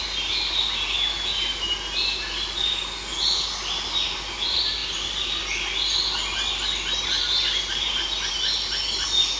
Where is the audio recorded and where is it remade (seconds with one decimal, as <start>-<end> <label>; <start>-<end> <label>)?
0.0-9.4 recorded